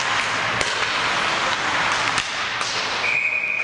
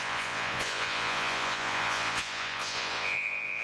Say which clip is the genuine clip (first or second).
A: first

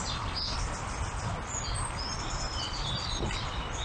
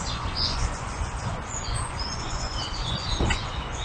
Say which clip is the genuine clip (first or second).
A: first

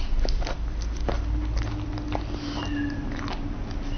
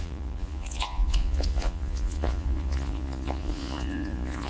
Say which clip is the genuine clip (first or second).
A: first